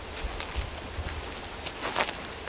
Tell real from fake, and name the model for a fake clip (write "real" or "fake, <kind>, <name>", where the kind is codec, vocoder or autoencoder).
real